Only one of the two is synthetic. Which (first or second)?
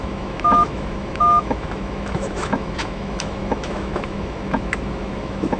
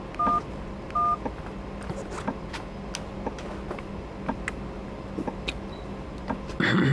first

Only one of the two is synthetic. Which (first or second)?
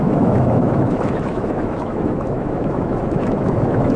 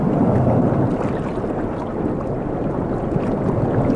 first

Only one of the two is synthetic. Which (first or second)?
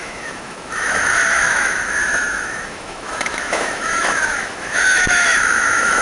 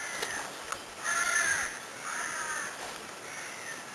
first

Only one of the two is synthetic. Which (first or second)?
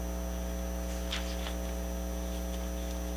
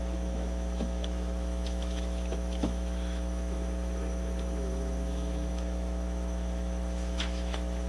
second